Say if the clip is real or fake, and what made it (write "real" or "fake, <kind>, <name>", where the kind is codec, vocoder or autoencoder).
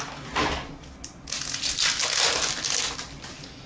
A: real